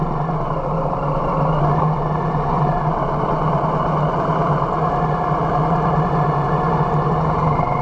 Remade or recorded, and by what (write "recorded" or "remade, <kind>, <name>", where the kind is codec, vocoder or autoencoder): recorded